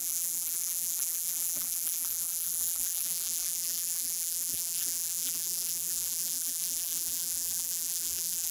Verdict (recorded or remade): remade